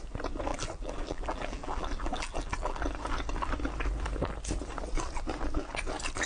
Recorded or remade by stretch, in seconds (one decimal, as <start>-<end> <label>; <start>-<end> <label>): 0.0-0.5 recorded; 0.5-2.8 remade; 2.8-6.3 recorded